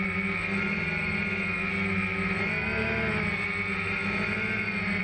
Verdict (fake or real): real